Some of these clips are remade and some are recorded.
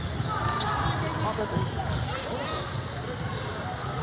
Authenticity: recorded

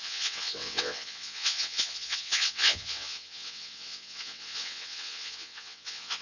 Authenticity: remade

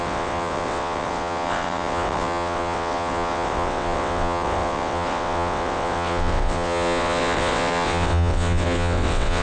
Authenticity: remade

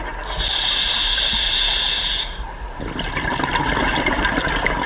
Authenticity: recorded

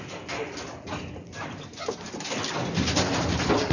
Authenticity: recorded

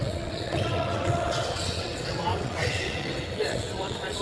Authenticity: remade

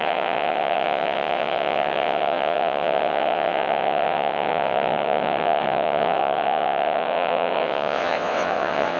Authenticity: remade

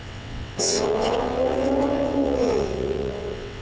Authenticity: remade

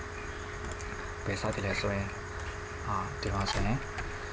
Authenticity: recorded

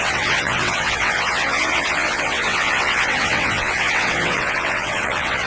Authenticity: remade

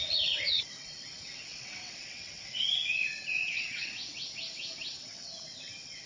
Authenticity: remade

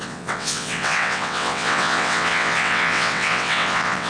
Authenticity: remade